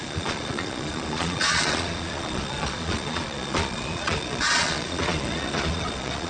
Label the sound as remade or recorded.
remade